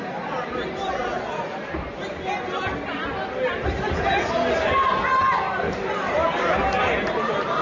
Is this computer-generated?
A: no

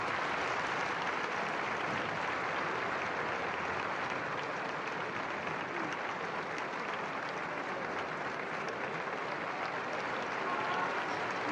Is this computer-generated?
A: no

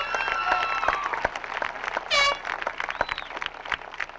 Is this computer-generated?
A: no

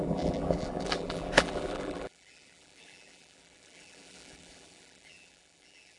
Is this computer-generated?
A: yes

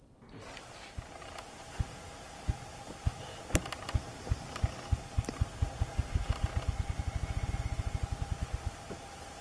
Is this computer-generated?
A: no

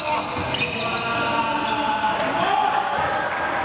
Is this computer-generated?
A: no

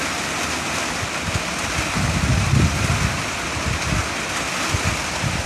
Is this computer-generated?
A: no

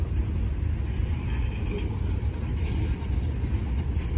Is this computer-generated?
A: no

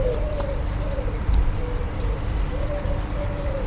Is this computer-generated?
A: yes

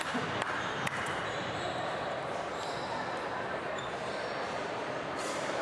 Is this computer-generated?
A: yes